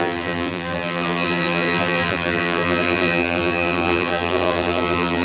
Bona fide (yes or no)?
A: no